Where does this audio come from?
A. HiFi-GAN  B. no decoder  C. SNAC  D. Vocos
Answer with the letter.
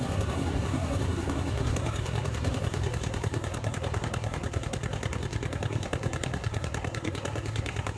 C